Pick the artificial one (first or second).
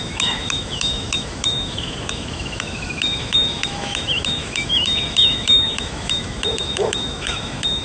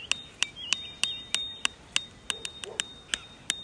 first